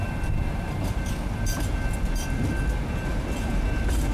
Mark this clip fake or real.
real